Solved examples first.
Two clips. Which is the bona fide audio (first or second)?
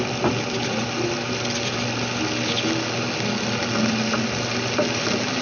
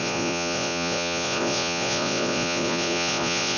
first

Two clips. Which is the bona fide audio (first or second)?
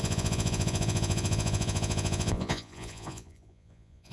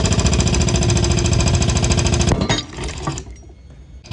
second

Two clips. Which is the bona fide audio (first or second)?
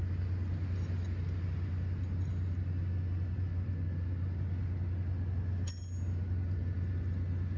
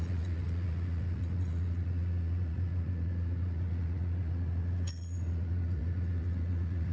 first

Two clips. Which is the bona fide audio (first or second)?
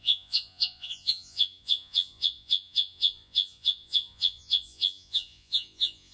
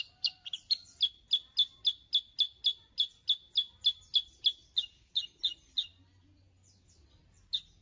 second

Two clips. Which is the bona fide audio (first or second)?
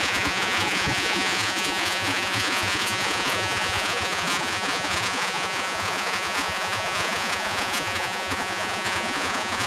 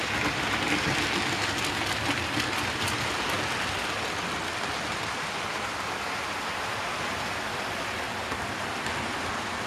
second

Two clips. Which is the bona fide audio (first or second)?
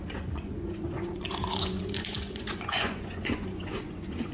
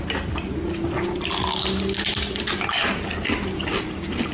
second